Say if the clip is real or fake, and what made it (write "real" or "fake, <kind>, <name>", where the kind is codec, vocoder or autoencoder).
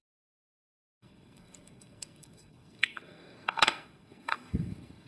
fake, codec, SNAC